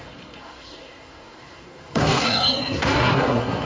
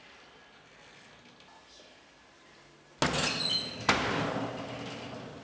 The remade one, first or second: first